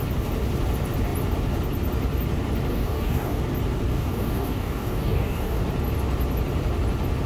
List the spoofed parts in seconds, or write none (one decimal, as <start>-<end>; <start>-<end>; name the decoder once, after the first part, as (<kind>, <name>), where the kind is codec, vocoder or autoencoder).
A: 2.7-3.4 (codec, DAC); 3.9-5.6